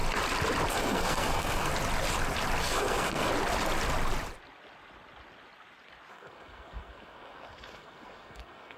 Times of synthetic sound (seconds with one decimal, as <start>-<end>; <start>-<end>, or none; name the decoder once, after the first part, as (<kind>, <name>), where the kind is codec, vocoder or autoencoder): 0.7-1.7 (codec, SNAC); 2.6-3.3; 6.1-8.8